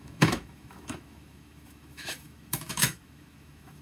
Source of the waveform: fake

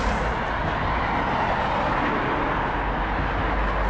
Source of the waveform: real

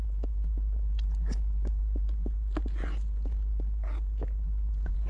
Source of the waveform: real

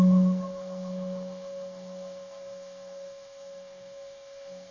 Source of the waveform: fake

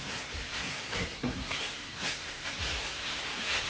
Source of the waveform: fake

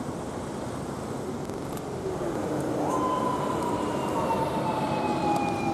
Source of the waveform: real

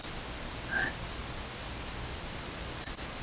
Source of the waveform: real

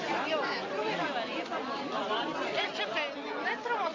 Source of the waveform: real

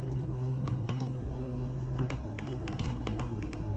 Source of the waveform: fake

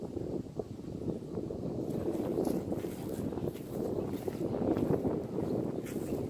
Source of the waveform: real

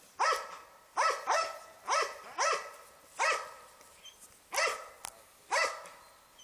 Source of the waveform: real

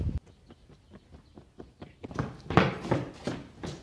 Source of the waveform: real